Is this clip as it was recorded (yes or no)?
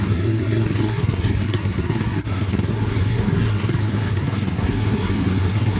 no